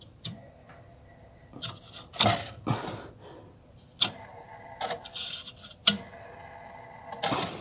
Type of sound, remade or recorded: recorded